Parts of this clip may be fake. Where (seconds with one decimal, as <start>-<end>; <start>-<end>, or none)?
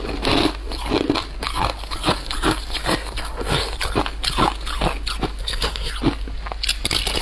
5.4-5.9